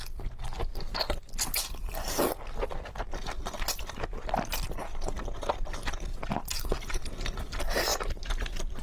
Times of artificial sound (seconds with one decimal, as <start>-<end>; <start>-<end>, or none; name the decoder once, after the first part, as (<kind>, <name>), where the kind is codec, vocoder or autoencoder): none